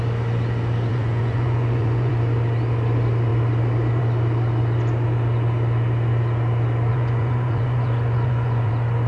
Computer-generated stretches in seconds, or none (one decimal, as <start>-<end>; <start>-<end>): 0.9-2.1; 6.9-8.7

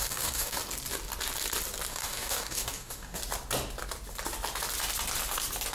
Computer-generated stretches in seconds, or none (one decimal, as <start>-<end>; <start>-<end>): 0.0-0.6; 1.9-3.2

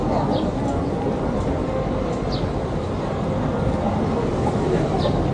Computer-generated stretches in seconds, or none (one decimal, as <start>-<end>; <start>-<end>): 4.3-5.3

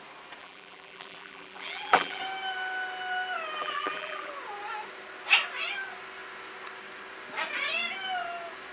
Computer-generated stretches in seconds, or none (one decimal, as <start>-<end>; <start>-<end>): 0.4-2.2; 3.6-4.3

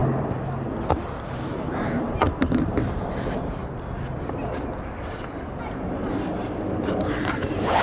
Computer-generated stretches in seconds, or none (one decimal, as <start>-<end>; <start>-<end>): 1.3-3.6; 5.6-7.8